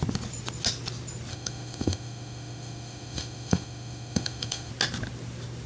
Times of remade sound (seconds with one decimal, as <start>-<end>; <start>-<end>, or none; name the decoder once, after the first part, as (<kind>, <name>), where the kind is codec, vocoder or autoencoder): 1.3-4.7 (autoencoder, DAC-VAE)